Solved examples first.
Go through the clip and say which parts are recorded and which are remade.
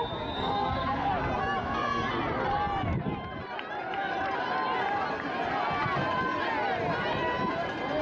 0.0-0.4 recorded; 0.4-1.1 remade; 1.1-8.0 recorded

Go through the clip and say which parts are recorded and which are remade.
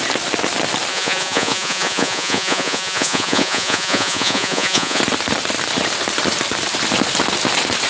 0.0-0.9 recorded; 0.9-5.0 remade; 5.0-7.9 recorded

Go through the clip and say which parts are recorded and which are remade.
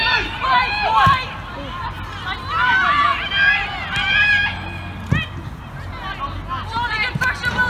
0.0-7.7 recorded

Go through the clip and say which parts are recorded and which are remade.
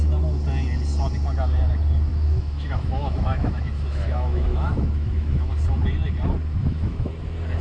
0.0-2.1 recorded; 2.1-5.5 remade; 5.5-6.6 recorded; 6.6-7.1 remade; 7.1-7.6 recorded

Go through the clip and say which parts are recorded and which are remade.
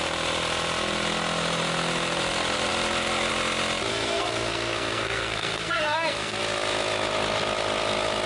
0.0-3.9 recorded; 3.9-6.4 remade; 6.4-8.3 recorded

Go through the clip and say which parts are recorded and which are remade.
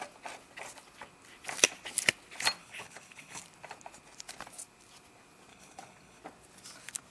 0.0-2.6 recorded; 2.6-3.4 remade; 3.4-5.5 recorded; 5.5-6.2 remade; 6.2-7.1 recorded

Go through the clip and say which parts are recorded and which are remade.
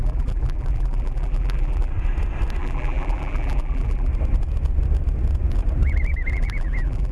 0.0-1.9 remade; 1.9-2.6 recorded; 2.6-4.1 remade; 4.1-6.3 recorded; 6.3-7.1 remade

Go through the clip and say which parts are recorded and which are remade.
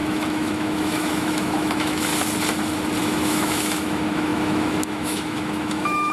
0.0-2.1 remade; 2.1-3.0 recorded; 3.0-6.1 remade